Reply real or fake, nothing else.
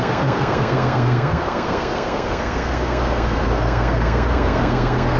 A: fake